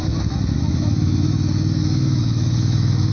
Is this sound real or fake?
fake